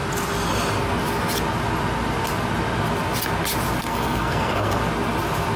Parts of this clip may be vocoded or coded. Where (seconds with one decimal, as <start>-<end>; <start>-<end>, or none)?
3.8-4.8